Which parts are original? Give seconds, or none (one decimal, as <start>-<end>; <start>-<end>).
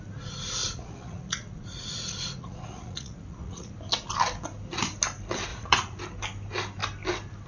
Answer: 0.0-0.6; 3.7-5.5; 6.0-7.5